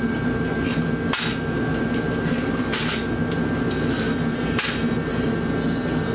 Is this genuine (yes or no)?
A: yes